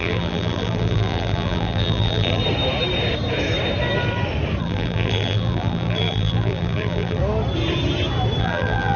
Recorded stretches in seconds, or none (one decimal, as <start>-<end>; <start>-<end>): 2.4-4.6; 7.2-8.4